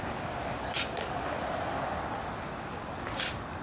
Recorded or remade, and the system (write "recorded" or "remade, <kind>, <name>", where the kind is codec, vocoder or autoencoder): recorded